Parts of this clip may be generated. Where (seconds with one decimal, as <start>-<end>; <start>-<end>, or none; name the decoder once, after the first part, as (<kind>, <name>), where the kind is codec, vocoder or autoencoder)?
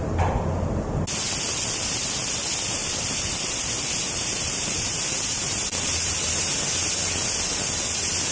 2.8-6.7 (vocoder, BigVGAN v2)